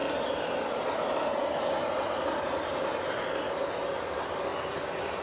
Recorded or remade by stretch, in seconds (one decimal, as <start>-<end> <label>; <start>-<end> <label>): 0.0-5.2 recorded